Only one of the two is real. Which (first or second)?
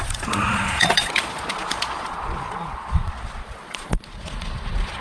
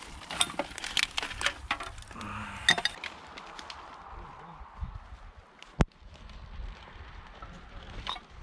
second